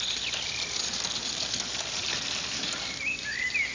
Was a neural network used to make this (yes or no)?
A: yes